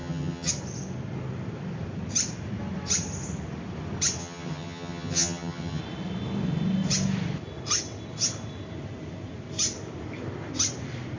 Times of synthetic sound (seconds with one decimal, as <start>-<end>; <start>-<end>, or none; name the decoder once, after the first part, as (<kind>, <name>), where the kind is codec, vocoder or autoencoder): 0.0-0.5 (vocoder, HiFi-GAN); 4.2-5.8